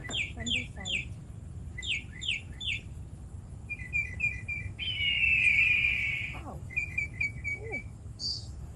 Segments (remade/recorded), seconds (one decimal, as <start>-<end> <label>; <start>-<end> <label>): 0.0-7.5 recorded; 7.5-8.2 remade; 8.2-8.8 recorded